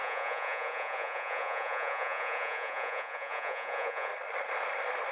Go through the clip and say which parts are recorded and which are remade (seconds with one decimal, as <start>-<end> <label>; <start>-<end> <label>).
0.0-4.1 remade; 4.1-5.1 recorded